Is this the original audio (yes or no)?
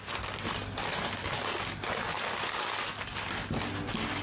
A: yes